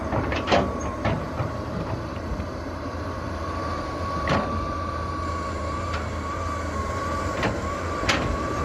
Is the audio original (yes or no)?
no